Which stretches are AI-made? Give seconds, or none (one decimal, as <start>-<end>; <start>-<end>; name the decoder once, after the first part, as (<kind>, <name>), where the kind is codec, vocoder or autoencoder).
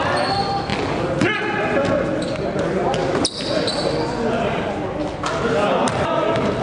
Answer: none